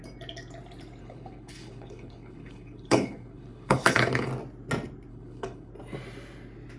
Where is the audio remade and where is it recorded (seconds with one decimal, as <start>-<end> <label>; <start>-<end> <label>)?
0.0-1.0 recorded; 1.0-4.3 remade; 4.3-5.1 recorded; 5.1-5.7 remade; 5.7-6.8 recorded